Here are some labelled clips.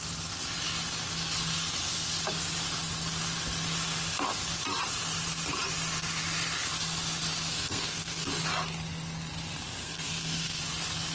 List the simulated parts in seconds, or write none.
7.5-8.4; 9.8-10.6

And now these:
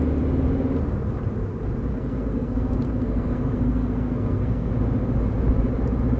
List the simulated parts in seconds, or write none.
1.9-4.7

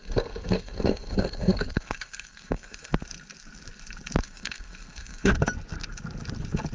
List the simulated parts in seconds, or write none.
0.0-2.9; 4.2-5.3

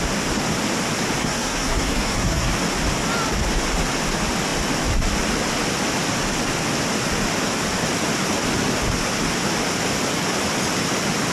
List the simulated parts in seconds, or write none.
1.2-2.5

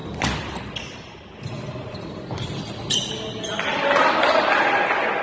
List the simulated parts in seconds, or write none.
none